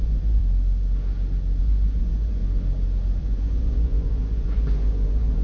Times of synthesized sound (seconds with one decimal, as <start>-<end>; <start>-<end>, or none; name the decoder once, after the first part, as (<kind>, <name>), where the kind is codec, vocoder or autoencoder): 0.0-0.4 (vocoder, Vocos); 1.6-2.4; 3.2-5.4